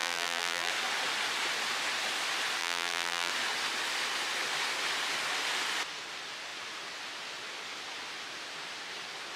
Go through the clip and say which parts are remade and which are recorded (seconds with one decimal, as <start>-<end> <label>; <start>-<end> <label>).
0.0-0.7 remade; 0.7-2.6 recorded; 2.6-3.3 remade; 3.3-9.4 recorded